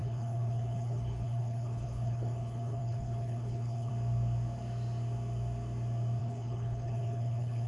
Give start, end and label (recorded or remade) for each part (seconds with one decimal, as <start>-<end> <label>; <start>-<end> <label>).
0.0-3.9 remade; 3.9-6.2 recorded; 6.2-7.7 remade